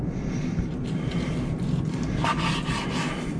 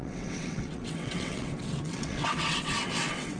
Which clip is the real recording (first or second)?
first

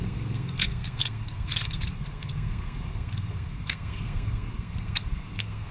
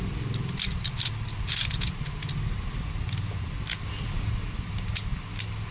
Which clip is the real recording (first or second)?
second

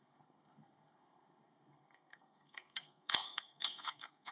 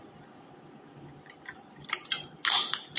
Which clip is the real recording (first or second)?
second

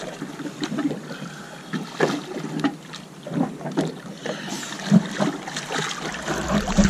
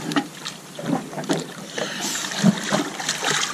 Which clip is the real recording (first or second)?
first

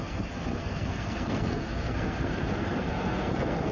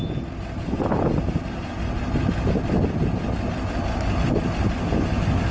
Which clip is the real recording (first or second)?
second